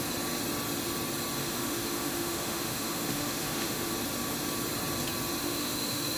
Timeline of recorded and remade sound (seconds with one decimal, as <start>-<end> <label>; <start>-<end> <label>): 0.0-1.4 recorded; 1.4-3.9 remade; 3.9-5.4 recorded; 5.4-6.2 remade